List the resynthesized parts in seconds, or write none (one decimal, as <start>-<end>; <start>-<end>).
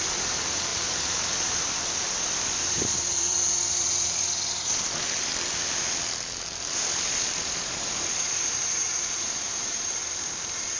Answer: 0.0-5.3; 6.7-10.8